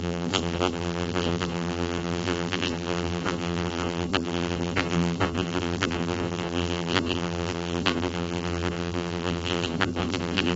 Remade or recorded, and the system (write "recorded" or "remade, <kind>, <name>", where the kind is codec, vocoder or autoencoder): remade, vocoder, BigVGAN v2